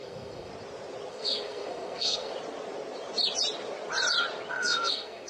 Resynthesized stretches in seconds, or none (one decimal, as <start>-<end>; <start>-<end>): 0.0-0.5; 1.1-2.3; 4.5-5.3